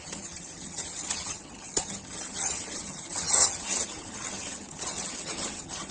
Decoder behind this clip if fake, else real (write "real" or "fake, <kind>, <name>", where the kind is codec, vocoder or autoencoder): fake, vocoder, HiFi-GAN